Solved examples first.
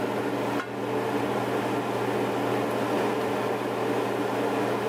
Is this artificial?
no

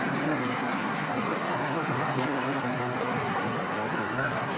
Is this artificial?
yes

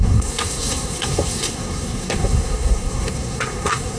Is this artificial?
yes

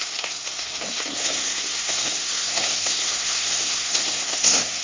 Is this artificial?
yes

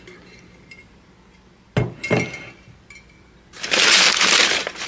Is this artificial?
no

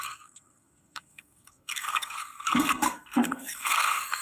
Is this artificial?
yes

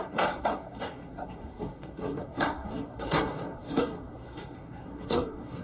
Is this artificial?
yes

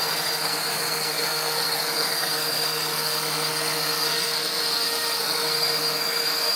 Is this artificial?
yes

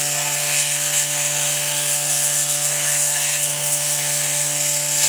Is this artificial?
yes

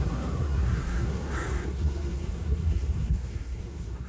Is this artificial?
yes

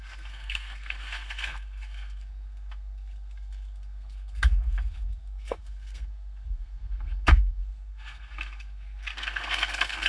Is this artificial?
yes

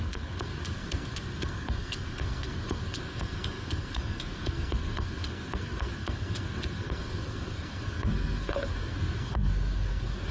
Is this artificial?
yes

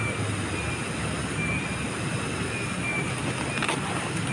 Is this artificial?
no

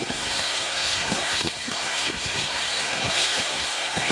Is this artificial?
yes